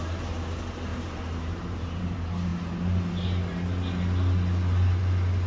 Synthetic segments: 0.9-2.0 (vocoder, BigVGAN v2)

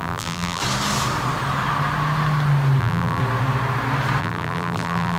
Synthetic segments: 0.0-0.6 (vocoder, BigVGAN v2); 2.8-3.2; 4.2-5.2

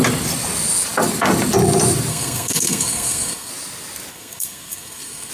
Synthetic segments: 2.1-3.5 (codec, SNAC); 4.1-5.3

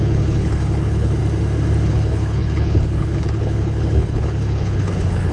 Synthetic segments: 0.0-1.2 (codec, HILCodec); 1.9-5.3

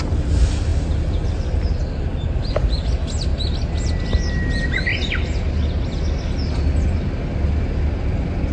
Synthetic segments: none